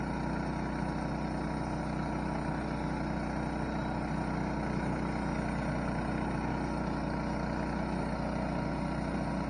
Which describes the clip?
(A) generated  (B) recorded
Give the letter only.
B